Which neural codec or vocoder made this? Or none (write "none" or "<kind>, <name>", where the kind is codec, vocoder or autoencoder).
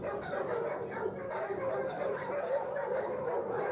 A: none